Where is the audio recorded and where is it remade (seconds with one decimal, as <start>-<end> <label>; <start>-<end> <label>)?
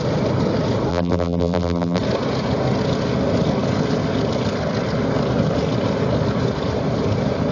0.0-0.9 recorded; 0.9-2.0 remade; 2.0-7.5 recorded